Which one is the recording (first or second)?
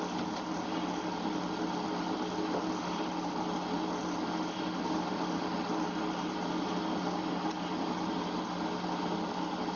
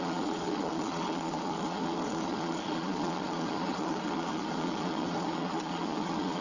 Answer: first